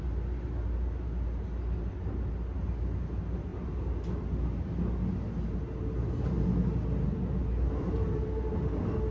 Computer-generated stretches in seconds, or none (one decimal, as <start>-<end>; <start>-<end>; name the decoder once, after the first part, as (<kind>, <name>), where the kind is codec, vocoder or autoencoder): none